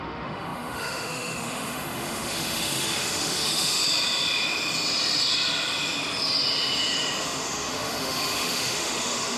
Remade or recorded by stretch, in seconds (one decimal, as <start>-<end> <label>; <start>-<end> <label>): 0.0-3.8 remade; 3.8-7.2 recorded; 7.2-9.4 remade